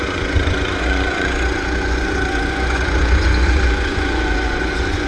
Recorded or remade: remade